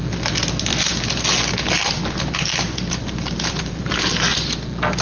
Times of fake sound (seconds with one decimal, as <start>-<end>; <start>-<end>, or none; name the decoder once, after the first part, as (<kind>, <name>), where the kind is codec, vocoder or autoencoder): 2.5-3.9 (vocoder, BigVGAN v2)